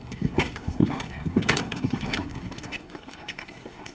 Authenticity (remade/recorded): remade